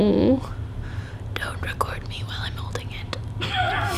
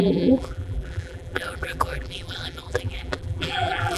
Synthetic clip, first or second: second